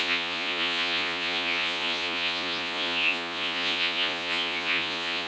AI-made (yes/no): yes